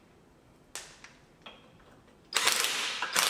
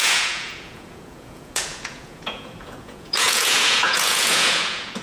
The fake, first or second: second